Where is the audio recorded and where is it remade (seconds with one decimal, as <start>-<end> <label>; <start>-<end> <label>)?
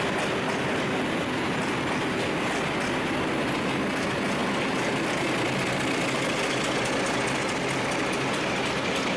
0.0-9.2 recorded